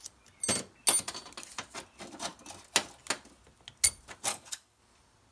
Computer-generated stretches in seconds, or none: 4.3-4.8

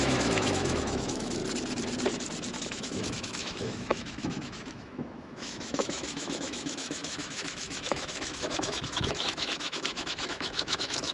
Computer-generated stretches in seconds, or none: 0.0-1.4; 2.6-11.1

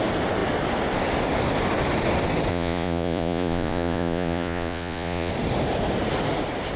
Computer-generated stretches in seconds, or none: 2.5-5.3

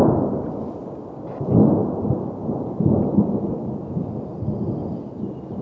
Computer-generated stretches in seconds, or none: none